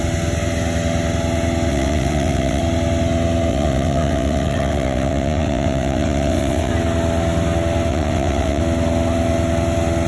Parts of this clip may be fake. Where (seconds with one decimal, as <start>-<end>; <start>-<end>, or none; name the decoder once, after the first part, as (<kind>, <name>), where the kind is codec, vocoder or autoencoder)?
1.7-2.6 (vocoder, WaveNeXt); 3.5-6.7; 7.9-8.6